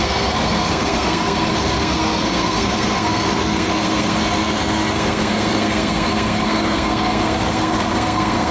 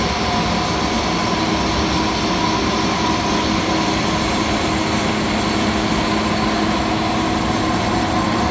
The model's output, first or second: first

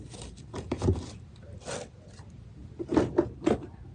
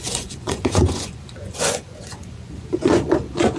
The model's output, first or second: second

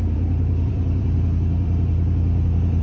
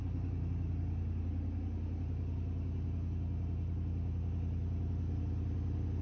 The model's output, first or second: first